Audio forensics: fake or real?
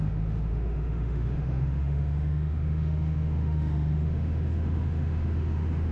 fake